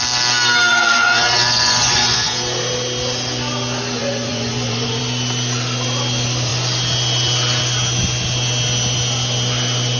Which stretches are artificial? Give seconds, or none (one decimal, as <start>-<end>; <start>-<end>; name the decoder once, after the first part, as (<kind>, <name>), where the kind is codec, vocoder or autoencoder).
0.7-2.3 (vocoder, Vocos); 4.0-5.0